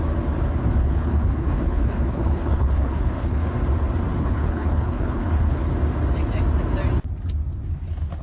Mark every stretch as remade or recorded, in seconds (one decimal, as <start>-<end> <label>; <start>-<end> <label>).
0.0-0.8 recorded; 0.8-3.5 remade; 3.5-4.2 recorded; 4.2-5.7 remade; 5.7-8.2 recorded